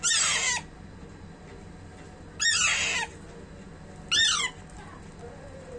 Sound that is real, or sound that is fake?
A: real